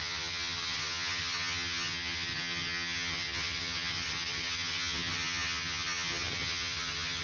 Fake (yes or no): yes